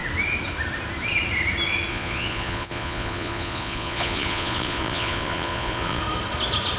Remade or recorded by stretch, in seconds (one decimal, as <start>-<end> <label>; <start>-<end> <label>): 0.0-1.9 recorded; 1.9-6.0 remade; 6.0-6.8 recorded